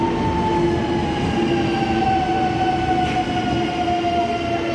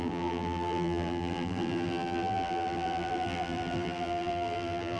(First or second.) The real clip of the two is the first